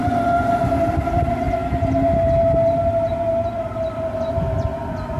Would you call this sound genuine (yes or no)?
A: yes